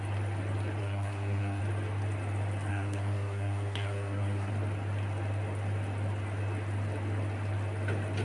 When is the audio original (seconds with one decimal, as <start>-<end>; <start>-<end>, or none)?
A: 0.0-0.8; 1.6-2.7; 4.5-8.2